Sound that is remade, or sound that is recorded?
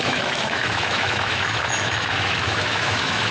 remade